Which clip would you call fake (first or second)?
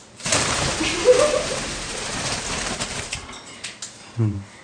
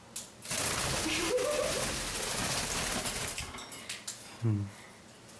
first